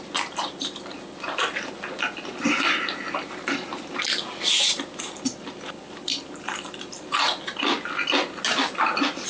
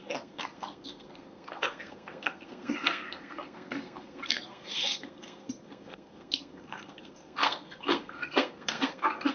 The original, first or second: first